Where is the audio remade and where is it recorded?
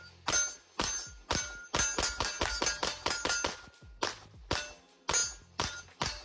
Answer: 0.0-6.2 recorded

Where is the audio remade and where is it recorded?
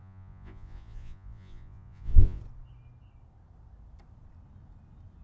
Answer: 0.0-2.4 remade; 2.4-5.2 recorded